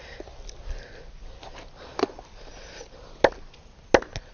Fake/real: real